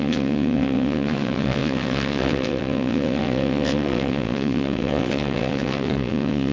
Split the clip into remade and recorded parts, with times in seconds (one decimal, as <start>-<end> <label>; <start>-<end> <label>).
0.0-6.5 remade